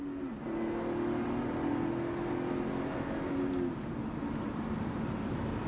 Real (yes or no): yes